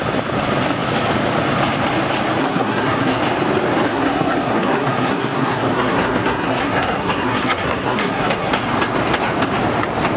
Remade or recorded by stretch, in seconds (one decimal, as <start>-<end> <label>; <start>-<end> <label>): 0.0-2.4 recorded; 2.4-3.2 remade; 3.2-3.9 recorded; 3.9-8.5 remade; 8.5-10.2 recorded